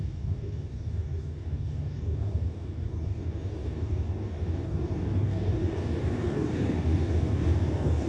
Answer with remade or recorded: remade